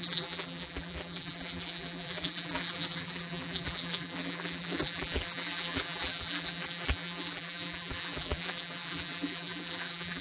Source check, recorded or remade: remade